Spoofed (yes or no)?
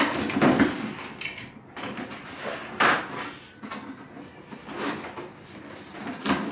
no